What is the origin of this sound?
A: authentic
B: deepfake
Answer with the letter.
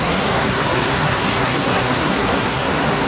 B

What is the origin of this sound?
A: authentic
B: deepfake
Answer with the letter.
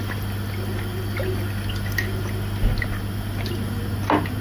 A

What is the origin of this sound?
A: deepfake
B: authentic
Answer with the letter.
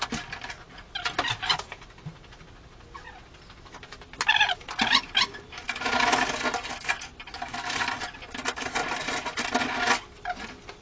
B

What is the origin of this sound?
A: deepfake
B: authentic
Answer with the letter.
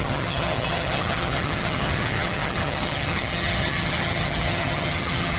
A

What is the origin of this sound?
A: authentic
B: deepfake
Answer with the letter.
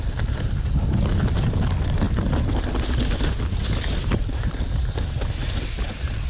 A